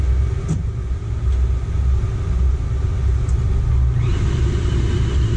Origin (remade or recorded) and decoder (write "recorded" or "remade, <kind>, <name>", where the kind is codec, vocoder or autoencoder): recorded